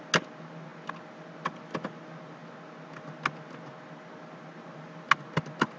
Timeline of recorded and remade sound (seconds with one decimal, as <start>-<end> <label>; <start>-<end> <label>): 0.0-5.8 recorded